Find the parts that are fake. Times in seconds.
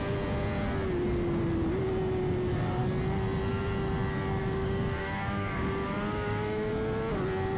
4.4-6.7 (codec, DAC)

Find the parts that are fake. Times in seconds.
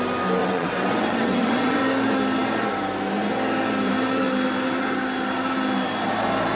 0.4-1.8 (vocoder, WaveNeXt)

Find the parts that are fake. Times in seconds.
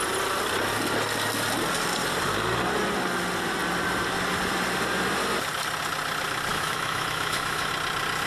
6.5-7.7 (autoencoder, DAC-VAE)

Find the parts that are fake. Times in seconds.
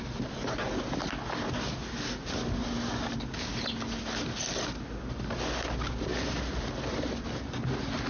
none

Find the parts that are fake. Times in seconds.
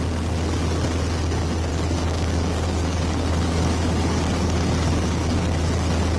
1.7-5.4 (codec, DAC)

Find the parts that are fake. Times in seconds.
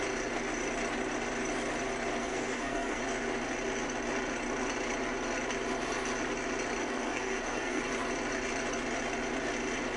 2.2-3.0 (codec, SNAC); 6.8-7.8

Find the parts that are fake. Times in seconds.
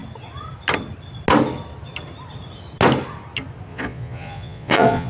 3.7-5.1 (vocoder, Vocos)